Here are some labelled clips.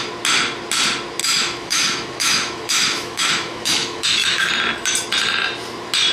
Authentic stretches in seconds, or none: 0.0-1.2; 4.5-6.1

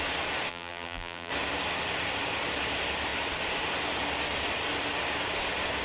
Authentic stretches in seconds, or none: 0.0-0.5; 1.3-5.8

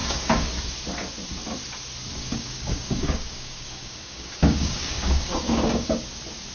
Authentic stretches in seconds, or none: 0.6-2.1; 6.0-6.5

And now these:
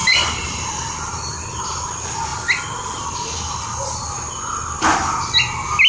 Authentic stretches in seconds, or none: 0.0-5.9